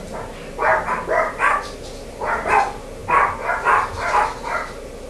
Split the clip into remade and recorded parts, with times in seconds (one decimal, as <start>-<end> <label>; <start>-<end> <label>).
0.0-5.1 recorded